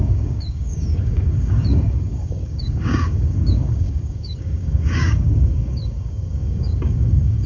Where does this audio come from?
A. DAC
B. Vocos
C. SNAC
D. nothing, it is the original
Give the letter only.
A